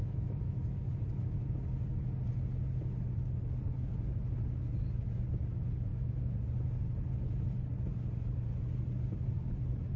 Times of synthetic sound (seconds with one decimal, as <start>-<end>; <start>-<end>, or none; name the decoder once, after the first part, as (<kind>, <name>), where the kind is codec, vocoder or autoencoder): 0.0-0.8 (autoencoder, DAC-VAE); 5.9-6.4